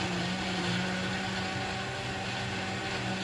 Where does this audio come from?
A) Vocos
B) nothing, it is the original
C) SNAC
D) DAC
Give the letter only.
B